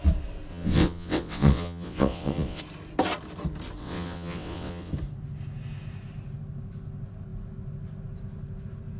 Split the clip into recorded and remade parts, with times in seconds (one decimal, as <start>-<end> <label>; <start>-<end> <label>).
0.0-0.5 recorded; 0.5-2.6 remade; 2.6-3.8 recorded; 3.8-4.9 remade; 4.9-9.0 recorded